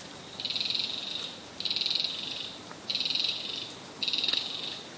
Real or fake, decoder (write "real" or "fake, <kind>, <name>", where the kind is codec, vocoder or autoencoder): real